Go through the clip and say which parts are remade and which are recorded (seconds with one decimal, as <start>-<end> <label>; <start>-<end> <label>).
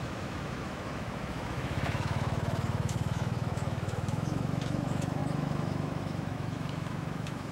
0.0-7.5 remade